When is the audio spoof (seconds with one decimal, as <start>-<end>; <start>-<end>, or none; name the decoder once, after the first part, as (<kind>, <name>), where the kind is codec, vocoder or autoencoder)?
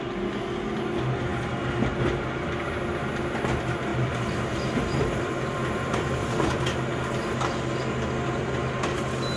3.9-6.6 (vocoder, BigVGAN v2)